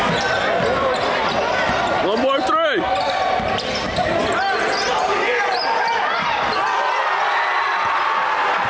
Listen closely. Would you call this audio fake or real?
real